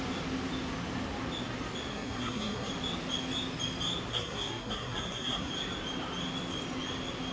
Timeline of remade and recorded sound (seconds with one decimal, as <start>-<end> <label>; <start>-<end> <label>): 0.0-1.9 recorded; 1.9-2.7 remade; 2.7-4.1 recorded; 4.1-5.5 remade; 5.5-7.3 recorded